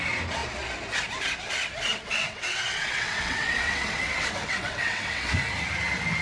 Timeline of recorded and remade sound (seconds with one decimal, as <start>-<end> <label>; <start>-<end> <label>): 0.0-1.9 recorded; 1.9-5.3 remade; 5.3-6.2 recorded